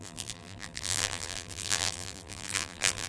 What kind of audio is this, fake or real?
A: fake